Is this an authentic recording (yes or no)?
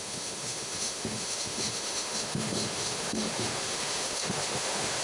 no